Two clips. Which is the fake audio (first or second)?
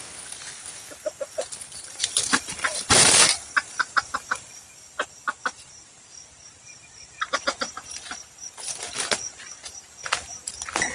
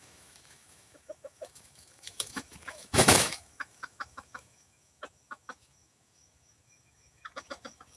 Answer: second